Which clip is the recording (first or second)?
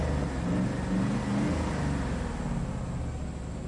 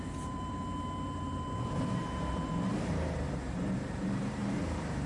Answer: first